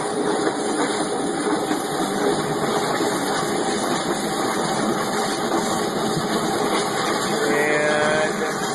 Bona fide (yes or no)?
yes